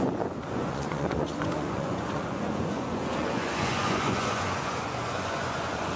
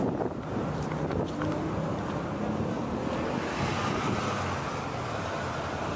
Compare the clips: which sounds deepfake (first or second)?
first